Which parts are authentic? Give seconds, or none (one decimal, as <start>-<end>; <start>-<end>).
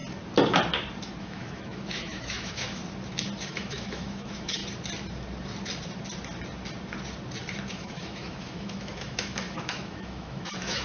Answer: 0.0-1.2; 2.8-3.4; 4.6-7.7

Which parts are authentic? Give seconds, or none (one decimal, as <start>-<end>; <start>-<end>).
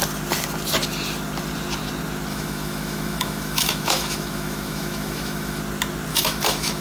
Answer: 0.0-2.3; 5.6-6.1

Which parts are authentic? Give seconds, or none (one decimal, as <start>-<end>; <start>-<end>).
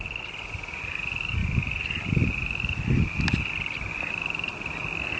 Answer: 0.0-5.2